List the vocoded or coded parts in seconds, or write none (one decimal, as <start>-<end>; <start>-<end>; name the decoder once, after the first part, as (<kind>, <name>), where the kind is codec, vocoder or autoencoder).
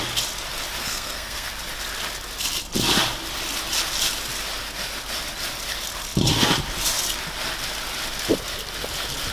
0.8-1.5 (codec, SNAC)